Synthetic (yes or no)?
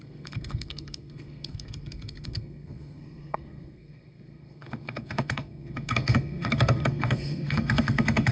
yes